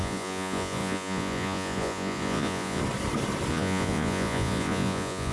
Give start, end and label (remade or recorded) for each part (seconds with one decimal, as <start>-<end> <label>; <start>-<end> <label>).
0.0-2.8 remade; 2.8-3.5 recorded; 3.5-5.3 remade